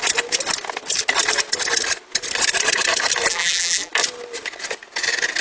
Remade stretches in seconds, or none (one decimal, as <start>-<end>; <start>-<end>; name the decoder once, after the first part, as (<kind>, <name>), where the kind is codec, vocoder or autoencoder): 3.3-3.9 (vocoder, BigVGAN v2)